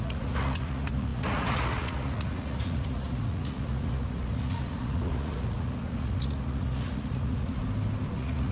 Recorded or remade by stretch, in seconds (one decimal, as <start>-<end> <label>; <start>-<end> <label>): 0.0-7.6 remade; 7.6-8.1 recorded; 8.1-8.5 remade